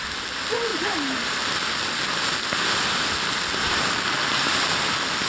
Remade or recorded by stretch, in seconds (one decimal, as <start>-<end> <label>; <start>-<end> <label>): 0.0-0.7 recorded; 0.7-1.5 remade; 1.5-5.3 recorded